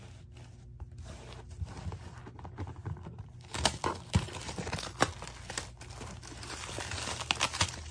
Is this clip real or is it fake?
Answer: real